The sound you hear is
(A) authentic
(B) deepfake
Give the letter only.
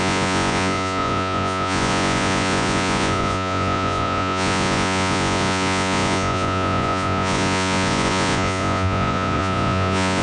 B